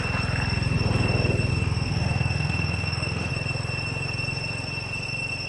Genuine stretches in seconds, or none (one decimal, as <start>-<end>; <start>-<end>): 0.0-1.5; 3.3-5.5